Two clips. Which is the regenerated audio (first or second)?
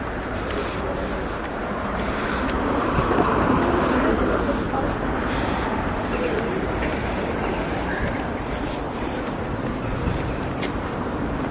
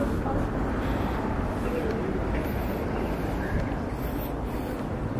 first